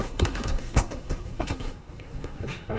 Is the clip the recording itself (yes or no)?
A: no